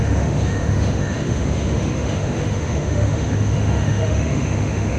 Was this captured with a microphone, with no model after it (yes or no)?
no